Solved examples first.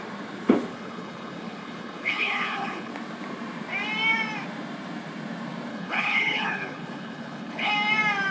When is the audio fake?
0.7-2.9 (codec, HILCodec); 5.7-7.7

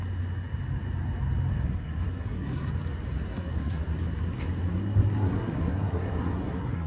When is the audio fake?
1.5-2.7 (codec, SNAC); 3.3-3.8; 4.7-6.9

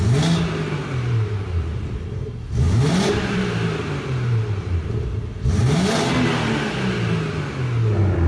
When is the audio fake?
0.9-5.9 (vocoder, BigVGAN v2)

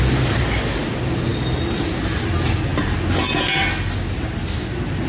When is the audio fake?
none

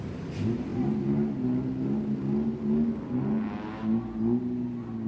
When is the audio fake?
none

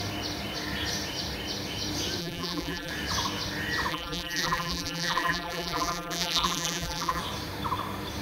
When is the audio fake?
2.2-2.9 (vocoder, BigVGAN v2); 3.9-7.2

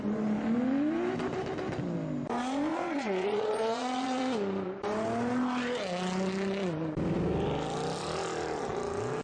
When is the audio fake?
2.7-4.2 (vocoder, Vocos)